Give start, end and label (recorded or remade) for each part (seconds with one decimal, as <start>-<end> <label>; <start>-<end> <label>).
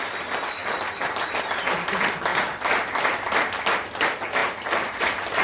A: 0.0-5.4 recorded